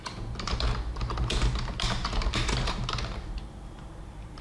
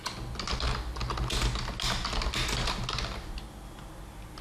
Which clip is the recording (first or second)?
second